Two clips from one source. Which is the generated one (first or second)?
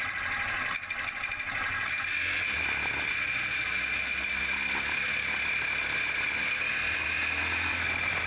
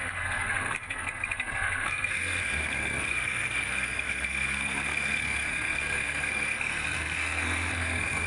second